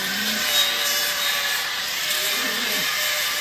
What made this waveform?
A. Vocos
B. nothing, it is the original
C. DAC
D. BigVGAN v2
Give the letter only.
D